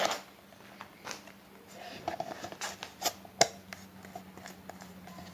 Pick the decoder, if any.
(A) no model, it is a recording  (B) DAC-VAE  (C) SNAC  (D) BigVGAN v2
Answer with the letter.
A